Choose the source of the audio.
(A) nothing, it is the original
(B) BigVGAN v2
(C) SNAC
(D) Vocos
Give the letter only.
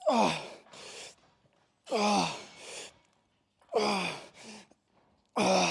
A